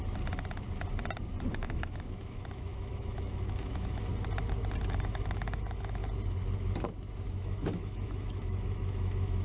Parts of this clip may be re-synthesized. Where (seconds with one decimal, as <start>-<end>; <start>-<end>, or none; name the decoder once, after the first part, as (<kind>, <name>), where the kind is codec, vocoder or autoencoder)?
1.5-4.1 (autoencoder, DAC-VAE); 4.9-6.0; 7.3-9.4